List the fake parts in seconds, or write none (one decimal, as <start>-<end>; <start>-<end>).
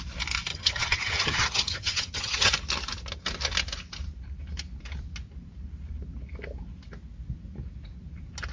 0.5-2.5